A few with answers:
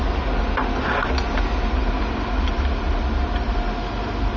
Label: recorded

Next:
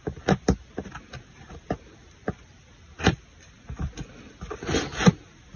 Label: recorded